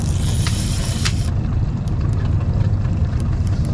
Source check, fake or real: fake